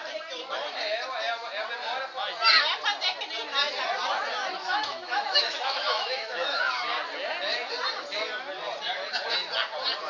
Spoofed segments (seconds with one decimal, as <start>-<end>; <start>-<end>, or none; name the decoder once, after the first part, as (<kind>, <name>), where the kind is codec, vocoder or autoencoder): 4.6-6.6 (autoencoder, DAC-VAE)